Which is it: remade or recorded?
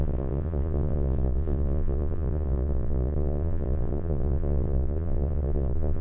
remade